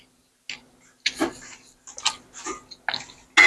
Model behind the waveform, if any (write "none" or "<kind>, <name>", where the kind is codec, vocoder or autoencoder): none